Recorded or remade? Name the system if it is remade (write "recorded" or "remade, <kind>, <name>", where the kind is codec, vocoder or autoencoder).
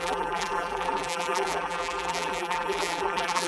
remade, vocoder, BigVGAN v2